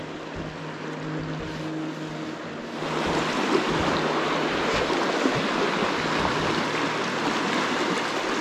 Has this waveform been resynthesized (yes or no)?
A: no